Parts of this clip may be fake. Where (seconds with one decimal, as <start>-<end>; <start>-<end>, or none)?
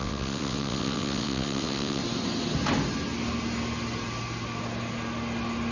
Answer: 0.0-2.0